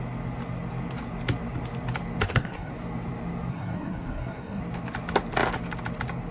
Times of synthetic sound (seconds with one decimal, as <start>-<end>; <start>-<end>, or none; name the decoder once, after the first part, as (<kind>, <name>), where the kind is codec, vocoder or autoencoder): 2.2-2.7 (codec, SNAC); 3.5-4.6